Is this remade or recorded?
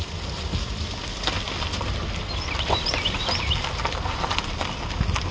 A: recorded